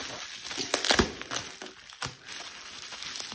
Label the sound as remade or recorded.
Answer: recorded